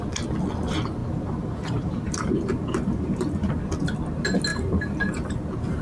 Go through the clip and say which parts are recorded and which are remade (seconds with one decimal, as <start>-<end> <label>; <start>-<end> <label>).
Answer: 0.0-1.0 recorded; 1.0-3.5 remade; 3.5-4.5 recorded; 4.5-5.8 remade